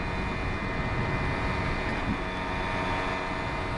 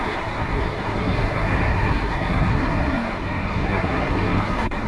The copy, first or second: second